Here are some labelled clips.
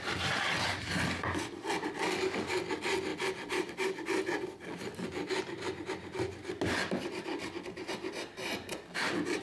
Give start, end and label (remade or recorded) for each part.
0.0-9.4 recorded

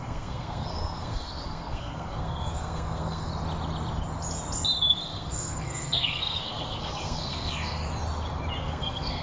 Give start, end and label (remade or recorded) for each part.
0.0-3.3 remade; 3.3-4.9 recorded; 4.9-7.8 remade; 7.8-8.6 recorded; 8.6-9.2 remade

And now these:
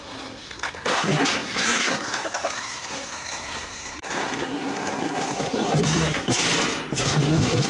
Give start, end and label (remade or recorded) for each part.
0.0-6.4 remade; 6.4-7.0 recorded; 7.0-7.7 remade

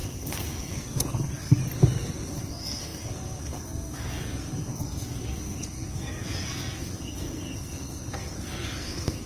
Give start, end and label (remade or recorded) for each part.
0.0-1.6 remade; 1.6-2.4 recorded; 2.4-9.3 remade